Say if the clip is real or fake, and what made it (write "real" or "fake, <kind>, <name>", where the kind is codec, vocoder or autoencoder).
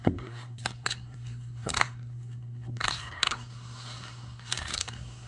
fake, codec, SNAC